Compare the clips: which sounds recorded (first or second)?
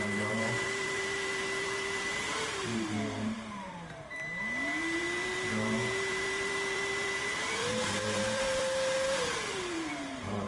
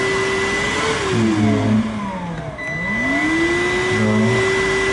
second